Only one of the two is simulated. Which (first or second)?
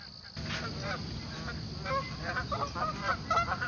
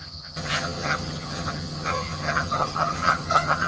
second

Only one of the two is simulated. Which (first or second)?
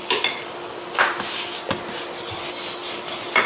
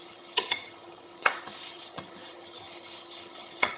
second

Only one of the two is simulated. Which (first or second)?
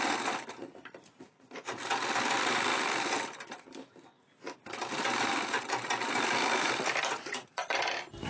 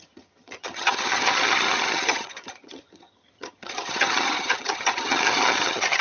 second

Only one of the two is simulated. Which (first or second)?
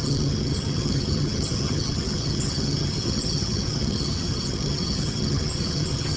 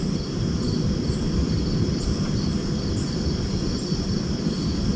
first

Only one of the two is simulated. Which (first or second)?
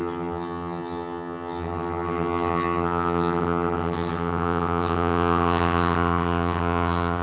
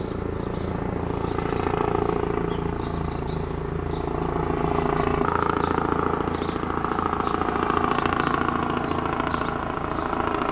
first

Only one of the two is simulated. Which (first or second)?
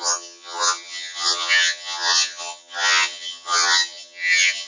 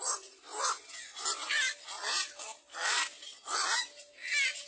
first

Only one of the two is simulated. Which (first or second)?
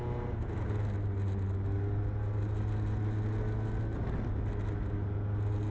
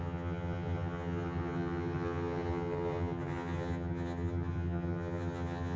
second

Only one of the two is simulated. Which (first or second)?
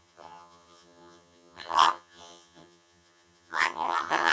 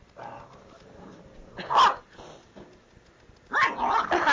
first